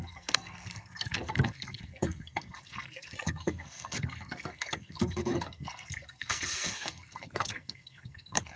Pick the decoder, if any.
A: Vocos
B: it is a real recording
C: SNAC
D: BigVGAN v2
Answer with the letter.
C